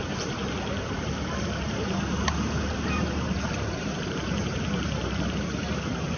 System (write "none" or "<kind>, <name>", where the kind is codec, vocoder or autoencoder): vocoder, BigVGAN v2